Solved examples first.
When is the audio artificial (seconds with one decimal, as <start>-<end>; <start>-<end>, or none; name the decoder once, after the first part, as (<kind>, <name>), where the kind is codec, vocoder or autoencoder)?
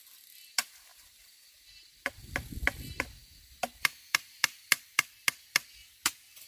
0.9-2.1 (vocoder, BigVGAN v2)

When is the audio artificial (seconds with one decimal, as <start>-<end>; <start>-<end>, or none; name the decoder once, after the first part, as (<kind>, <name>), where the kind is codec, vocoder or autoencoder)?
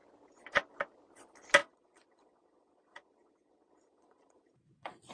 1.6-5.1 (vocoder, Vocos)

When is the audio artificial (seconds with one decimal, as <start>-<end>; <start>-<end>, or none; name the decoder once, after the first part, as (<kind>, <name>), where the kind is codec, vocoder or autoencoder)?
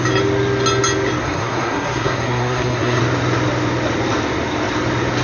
1.2-3.0 (codec, SNAC)